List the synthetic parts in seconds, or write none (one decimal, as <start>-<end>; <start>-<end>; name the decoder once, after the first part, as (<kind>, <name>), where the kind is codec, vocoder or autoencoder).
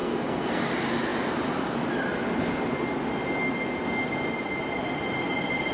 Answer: 0.0-0.7 (codec, SNAC)